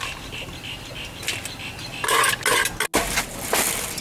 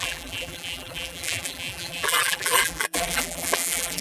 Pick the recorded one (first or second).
first